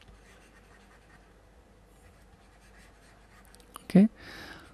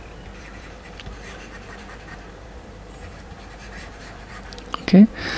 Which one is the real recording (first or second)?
first